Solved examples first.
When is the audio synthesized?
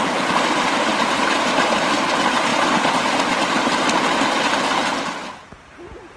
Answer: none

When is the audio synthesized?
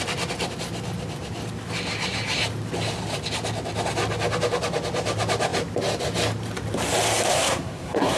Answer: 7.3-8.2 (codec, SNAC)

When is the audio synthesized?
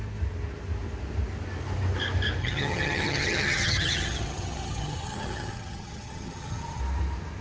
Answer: 2.4-6.8 (vocoder, HiFi-GAN)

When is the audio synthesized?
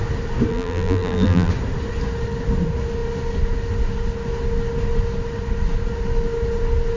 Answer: 0.5-1.5 (vocoder, BigVGAN v2)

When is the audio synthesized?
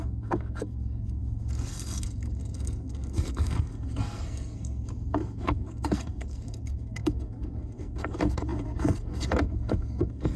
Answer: 0.0-10.4 (codec, SNAC)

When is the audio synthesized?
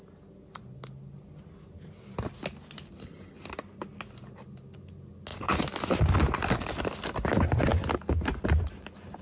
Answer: none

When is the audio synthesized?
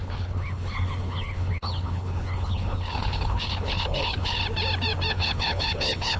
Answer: 0.0-4.4 (codec, HILCodec); 5.1-6.2